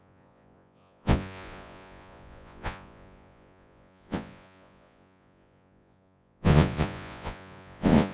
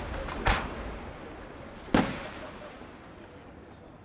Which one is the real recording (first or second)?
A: second